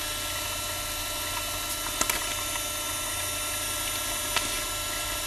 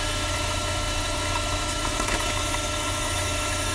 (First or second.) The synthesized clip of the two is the second